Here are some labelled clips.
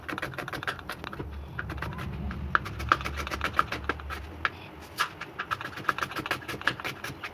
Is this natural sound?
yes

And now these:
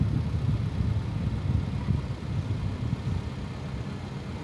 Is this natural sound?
yes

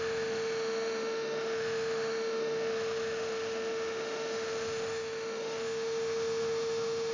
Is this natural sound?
no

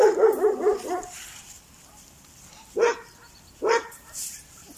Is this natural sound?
yes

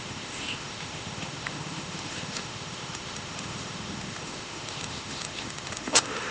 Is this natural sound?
no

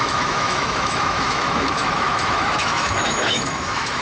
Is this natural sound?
no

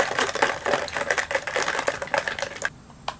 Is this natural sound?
yes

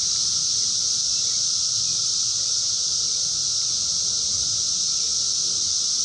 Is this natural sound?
yes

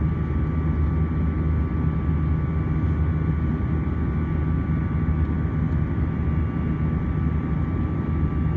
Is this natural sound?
yes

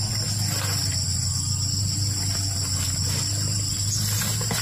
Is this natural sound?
yes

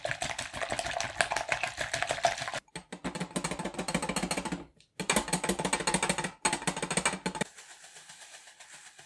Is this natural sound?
yes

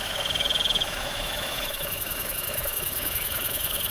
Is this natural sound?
no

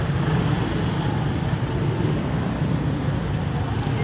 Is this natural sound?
yes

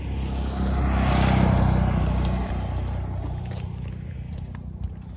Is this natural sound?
yes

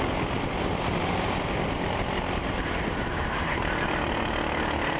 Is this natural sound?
yes